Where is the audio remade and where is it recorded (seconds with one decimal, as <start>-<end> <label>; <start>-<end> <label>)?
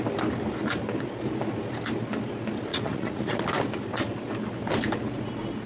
0.0-2.7 recorded; 2.7-3.4 remade; 3.4-5.7 recorded